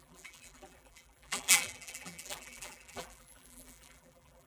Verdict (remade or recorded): remade